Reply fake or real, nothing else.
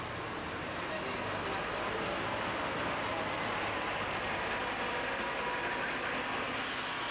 real